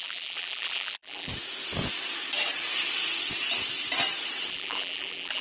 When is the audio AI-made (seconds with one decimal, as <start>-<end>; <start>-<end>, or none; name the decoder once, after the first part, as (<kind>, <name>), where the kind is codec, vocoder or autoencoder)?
0.0-1.3 (vocoder, BigVGAN v2); 4.5-5.4